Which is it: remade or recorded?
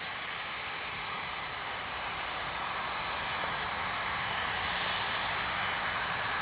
recorded